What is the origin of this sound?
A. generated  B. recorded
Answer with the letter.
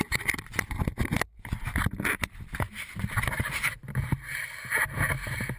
B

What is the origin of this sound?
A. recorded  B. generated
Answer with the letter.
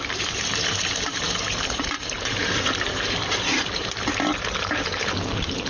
B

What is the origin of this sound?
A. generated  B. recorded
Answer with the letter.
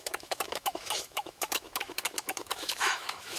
A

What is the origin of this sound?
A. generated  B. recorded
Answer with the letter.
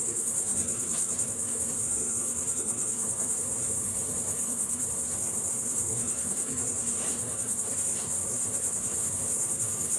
A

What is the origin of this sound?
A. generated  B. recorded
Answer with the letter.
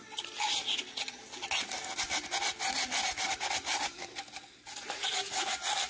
B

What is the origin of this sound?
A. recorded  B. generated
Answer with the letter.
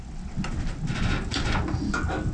A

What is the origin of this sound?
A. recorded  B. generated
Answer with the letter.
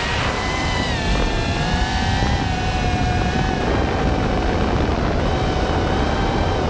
B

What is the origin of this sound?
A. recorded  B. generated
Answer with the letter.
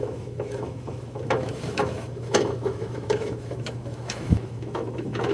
B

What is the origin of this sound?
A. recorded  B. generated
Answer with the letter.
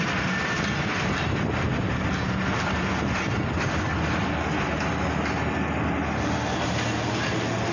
A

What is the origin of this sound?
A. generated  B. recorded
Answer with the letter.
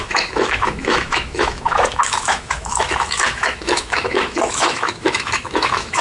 A